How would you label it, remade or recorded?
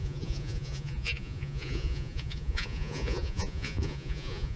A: remade